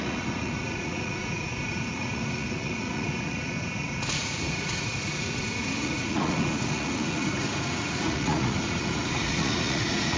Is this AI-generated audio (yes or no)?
yes